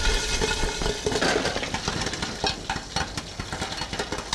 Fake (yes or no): no